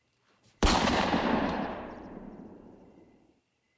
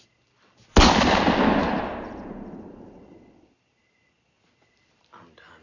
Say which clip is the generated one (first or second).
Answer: first